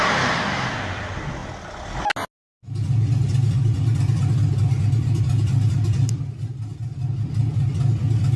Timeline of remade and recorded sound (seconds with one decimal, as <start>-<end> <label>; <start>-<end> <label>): 0.0-8.4 recorded